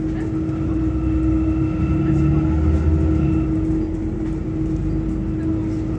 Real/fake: real